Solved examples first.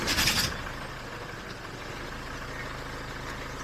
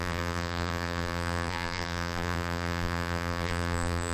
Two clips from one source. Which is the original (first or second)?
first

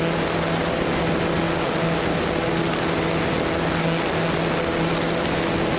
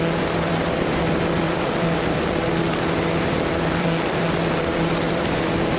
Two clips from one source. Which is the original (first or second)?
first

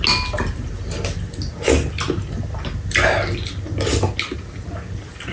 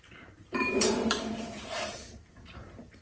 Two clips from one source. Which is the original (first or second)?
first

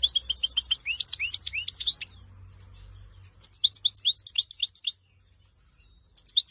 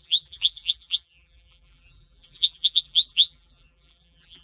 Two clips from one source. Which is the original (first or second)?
first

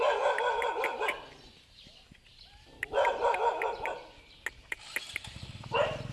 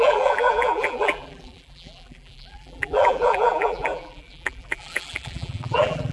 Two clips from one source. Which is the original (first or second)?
first